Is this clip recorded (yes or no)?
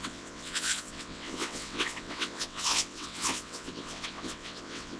no